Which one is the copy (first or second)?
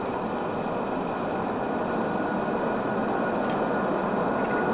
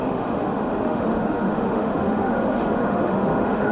second